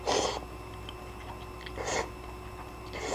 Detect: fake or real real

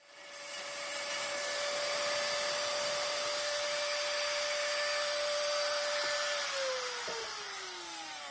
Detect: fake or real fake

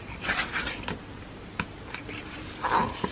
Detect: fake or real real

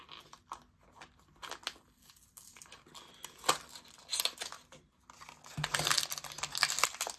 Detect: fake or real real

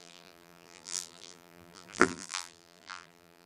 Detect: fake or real fake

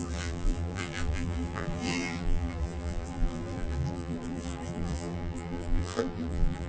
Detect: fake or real fake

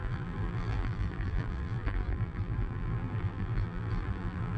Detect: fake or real fake